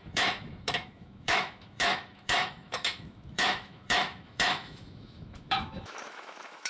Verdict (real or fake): fake